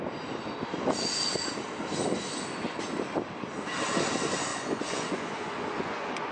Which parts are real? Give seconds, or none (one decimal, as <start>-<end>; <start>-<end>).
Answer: 0.0-4.5